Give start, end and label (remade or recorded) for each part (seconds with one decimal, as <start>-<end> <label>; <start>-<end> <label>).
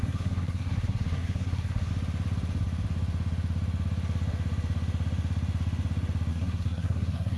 0.0-1.9 remade; 1.9-6.3 recorded; 6.3-7.4 remade